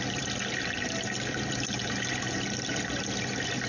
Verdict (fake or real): fake